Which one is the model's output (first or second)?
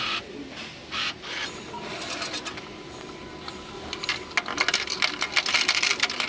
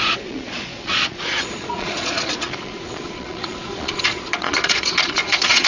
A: second